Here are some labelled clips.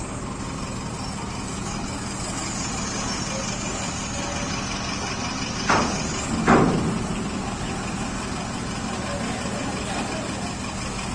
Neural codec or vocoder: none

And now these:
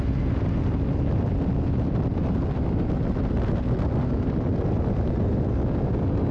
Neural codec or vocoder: none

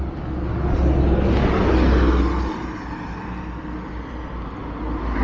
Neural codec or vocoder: none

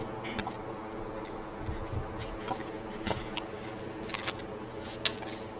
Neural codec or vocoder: none